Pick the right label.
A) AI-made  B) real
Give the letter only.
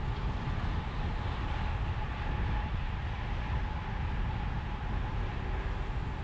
B